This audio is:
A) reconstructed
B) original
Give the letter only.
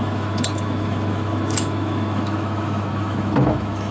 A